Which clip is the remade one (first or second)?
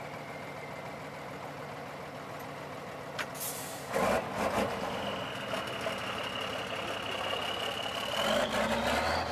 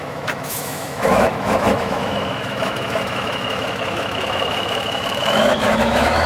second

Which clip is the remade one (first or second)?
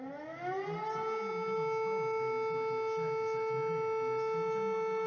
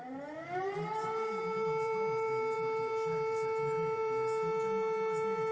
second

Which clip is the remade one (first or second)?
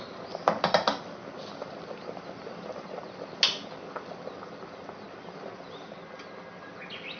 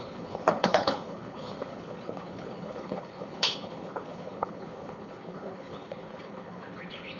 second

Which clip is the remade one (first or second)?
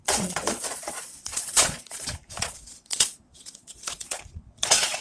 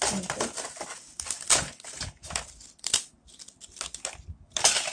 first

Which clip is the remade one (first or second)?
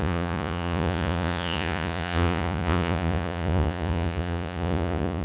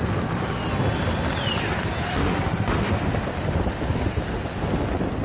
first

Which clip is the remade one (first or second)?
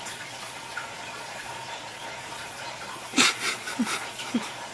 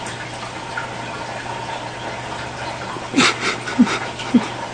first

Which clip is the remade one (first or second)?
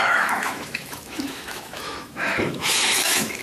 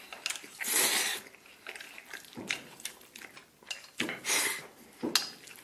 first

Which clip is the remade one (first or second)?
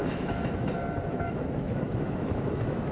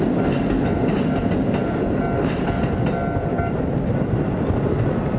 first